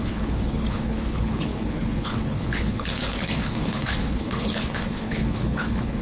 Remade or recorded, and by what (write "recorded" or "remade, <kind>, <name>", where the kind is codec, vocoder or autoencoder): remade, codec, HILCodec